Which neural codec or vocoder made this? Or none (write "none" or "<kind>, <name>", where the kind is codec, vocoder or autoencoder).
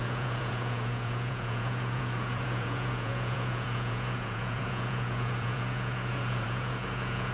vocoder, Vocos